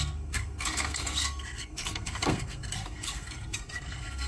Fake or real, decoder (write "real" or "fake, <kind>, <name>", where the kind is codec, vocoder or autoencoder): fake, codec, SNAC